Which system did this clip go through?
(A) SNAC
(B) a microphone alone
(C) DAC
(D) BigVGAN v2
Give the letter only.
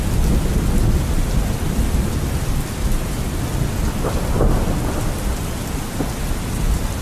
B